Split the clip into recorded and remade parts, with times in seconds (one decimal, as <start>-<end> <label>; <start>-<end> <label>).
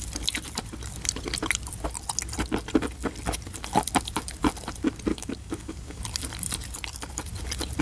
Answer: 0.0-5.1 recorded; 5.1-6.0 remade; 6.0-7.8 recorded